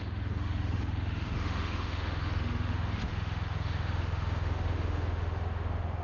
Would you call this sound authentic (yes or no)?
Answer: no